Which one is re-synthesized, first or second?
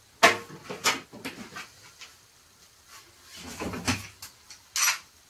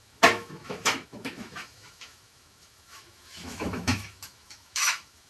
second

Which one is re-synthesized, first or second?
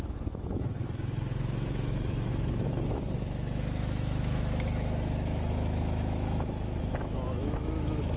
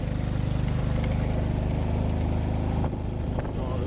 first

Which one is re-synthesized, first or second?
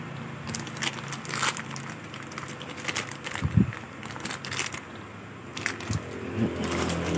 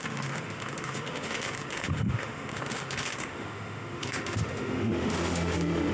second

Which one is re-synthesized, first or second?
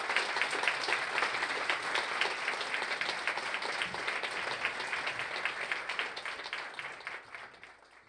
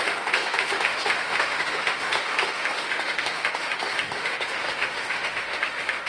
second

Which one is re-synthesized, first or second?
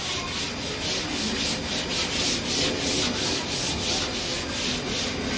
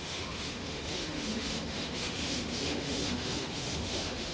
second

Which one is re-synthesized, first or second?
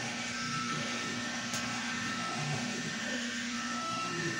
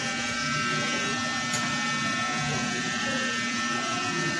first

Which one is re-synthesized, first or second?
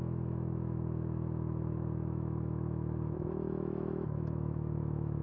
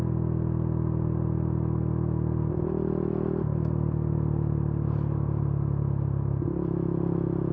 first